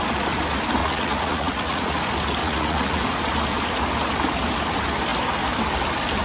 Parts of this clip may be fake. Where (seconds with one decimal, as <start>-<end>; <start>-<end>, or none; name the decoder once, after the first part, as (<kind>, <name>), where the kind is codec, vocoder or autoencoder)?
0.8-2.0 (vocoder, Vocos); 2.4-3.0